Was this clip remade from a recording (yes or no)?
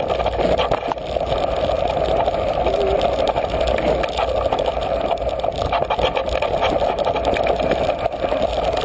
no